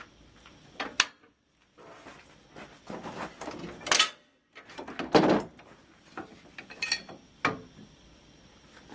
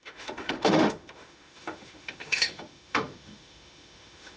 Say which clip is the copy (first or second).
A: second